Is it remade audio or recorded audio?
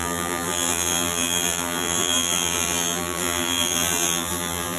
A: remade